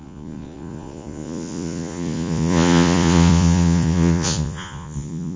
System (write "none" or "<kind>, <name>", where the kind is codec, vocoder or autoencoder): vocoder, Vocos